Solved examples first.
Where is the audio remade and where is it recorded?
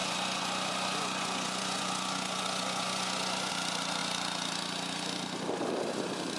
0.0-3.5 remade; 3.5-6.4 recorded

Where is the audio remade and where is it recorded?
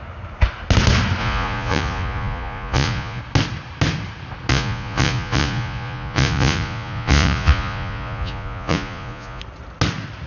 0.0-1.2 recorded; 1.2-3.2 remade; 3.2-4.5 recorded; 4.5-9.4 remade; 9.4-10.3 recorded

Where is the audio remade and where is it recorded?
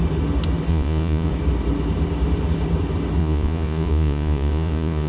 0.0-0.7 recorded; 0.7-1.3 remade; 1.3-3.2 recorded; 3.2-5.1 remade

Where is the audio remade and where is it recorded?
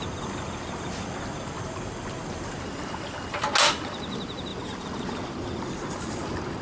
0.0-6.6 recorded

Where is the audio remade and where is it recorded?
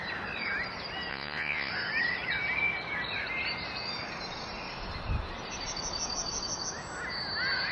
0.0-1.1 recorded; 1.1-1.7 remade; 1.7-7.7 recorded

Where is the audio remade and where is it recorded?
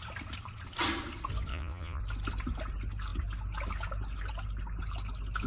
0.0-1.5 recorded; 1.5-2.0 remade; 2.0-5.5 recorded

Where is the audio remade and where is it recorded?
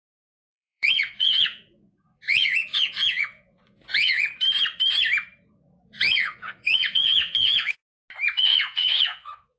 0.0-4.3 remade; 4.3-5.9 recorded; 5.9-7.8 remade; 7.8-8.4 recorded; 8.4-9.6 remade